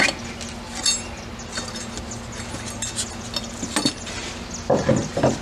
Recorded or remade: recorded